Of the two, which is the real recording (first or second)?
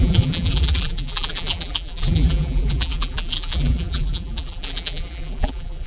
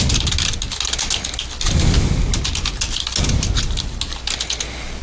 second